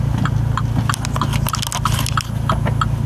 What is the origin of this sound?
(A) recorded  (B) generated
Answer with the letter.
A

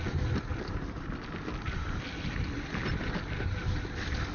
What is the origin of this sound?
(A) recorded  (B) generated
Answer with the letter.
A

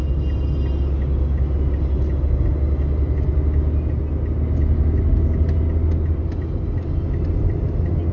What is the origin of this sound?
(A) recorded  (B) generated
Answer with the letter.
A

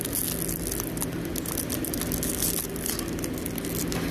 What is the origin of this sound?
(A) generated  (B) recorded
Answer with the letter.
B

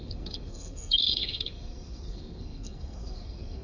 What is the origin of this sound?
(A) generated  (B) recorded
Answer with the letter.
A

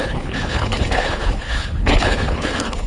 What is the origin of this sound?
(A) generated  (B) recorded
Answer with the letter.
A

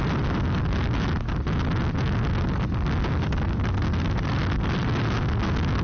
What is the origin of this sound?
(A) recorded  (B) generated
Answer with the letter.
A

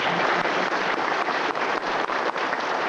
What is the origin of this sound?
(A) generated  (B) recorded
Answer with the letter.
A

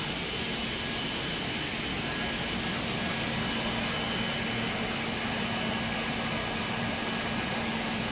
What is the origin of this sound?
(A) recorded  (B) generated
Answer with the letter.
A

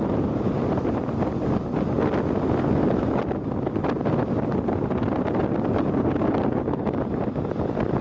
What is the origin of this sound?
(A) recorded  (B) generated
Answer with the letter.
A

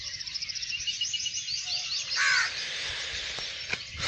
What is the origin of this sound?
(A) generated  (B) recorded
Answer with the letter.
B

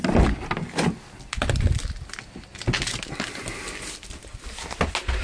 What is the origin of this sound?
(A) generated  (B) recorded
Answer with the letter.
B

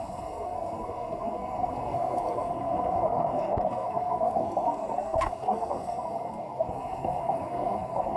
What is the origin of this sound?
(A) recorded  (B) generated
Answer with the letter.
B